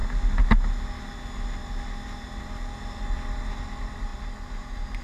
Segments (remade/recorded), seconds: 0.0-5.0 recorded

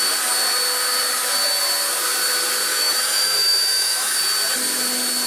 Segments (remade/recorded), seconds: 0.0-2.7 recorded; 2.7-4.2 remade; 4.2-5.3 recorded